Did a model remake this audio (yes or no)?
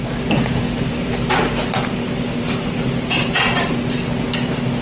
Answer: no